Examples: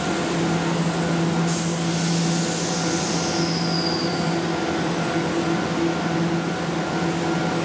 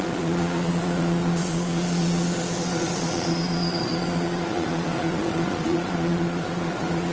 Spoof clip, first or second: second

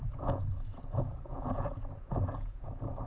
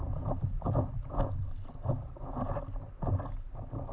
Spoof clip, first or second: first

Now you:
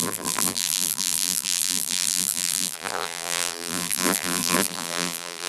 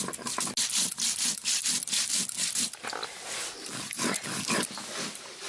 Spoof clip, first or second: first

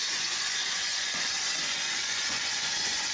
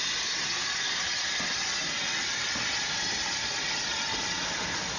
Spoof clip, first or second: first